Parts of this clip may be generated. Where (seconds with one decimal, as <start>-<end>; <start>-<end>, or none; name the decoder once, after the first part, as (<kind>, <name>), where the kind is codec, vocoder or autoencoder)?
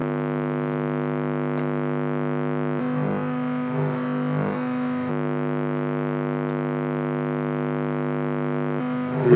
2.8-5.1 (autoencoder, DAC-VAE); 8.8-9.4